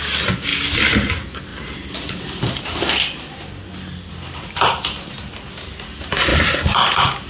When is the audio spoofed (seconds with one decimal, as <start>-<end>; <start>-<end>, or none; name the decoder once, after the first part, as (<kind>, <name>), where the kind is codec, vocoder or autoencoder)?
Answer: 0.5-1.1 (vocoder, BigVGAN v2); 6.3-7.3